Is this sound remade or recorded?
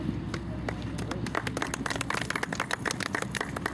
recorded